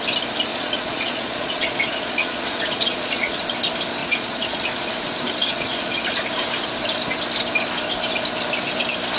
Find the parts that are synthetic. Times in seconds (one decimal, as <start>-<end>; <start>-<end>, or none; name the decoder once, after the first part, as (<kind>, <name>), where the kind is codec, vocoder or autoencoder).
0.5-3.4 (vocoder, Vocos); 4.0-4.9; 5.4-6.2